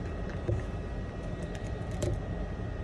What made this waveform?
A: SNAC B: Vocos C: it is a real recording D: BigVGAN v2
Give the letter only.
D